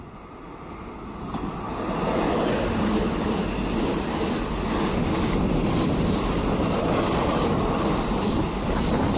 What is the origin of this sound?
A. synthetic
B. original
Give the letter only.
B